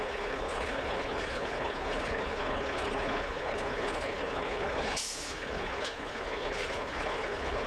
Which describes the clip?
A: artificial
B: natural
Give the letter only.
A